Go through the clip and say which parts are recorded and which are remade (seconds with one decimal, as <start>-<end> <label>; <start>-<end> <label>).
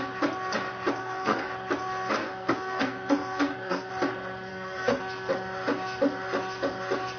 0.0-1.0 recorded; 1.0-1.5 remade; 1.5-2.2 recorded; 2.2-3.9 remade; 3.9-4.5 recorded; 4.5-5.0 remade; 5.0-7.2 recorded